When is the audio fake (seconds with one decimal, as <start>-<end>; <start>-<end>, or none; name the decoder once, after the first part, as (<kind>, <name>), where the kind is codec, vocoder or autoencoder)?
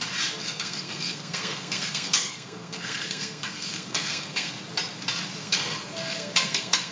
0.4-4.5 (codec, SNAC); 5.4-6.9